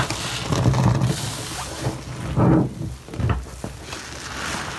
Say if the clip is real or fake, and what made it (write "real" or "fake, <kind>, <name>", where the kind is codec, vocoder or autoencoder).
real